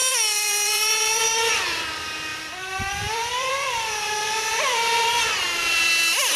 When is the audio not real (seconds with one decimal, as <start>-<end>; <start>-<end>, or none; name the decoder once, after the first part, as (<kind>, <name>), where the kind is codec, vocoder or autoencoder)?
0.0-1.9 (vocoder, BigVGAN v2); 2.3-5.2